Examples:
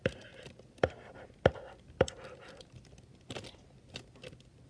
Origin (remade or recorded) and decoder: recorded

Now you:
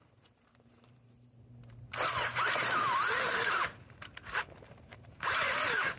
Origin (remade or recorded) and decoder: remade, vocoder, BigVGAN v2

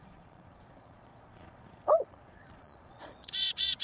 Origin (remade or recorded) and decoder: remade, vocoder, Vocos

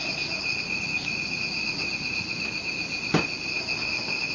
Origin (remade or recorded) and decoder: recorded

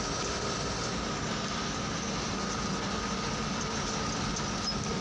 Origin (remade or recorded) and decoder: recorded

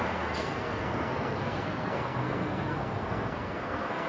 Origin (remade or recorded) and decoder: remade, codec, SNAC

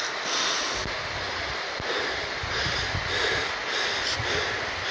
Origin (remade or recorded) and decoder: recorded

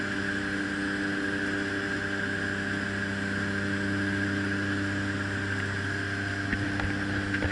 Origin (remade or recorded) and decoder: recorded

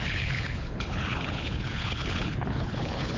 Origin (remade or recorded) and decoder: remade, codec, HILCodec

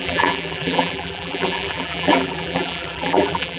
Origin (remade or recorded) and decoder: remade, vocoder, BigVGAN v2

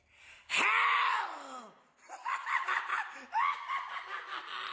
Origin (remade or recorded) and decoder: recorded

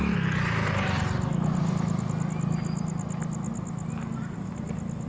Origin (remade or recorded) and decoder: recorded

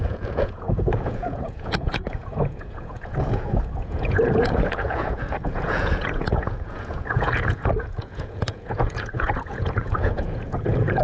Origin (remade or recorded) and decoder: remade, vocoder, Vocos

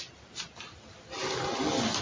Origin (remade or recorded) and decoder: recorded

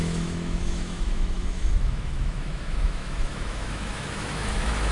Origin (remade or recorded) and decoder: remade, autoencoder, DAC-VAE